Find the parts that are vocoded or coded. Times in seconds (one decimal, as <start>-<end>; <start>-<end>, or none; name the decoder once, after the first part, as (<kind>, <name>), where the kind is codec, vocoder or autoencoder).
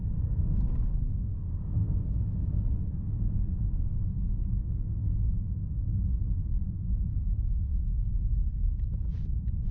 4.1-8.4 (autoencoder, DAC-VAE)